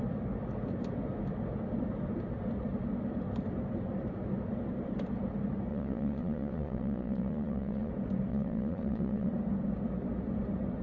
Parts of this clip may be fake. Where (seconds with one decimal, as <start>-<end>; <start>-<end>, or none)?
5.7-7.9; 8.3-9.3